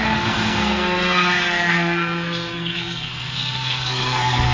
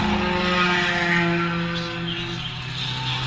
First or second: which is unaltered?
second